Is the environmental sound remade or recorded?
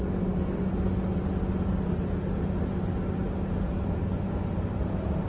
recorded